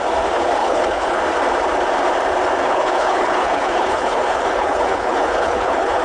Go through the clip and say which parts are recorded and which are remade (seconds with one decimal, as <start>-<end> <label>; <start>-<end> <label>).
0.0-0.6 recorded; 0.6-1.2 remade; 1.2-2.6 recorded; 2.6-6.0 remade